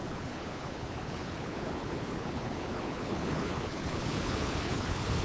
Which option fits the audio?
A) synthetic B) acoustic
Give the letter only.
A